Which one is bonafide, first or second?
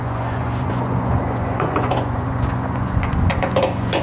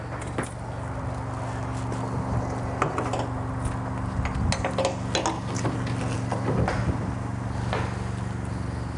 second